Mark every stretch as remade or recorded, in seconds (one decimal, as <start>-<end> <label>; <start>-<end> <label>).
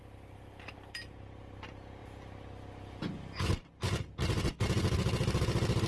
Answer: 0.0-5.9 recorded